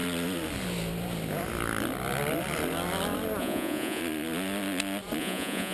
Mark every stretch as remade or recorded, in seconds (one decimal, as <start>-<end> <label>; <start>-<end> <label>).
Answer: 0.0-3.4 recorded; 3.4-4.0 remade; 4.0-5.2 recorded; 5.2-5.7 remade